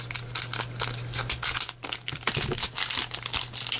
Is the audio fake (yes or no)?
no